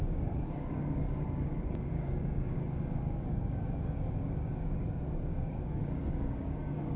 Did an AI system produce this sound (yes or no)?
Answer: yes